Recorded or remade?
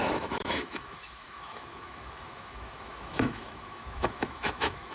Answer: remade